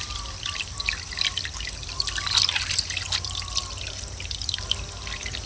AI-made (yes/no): no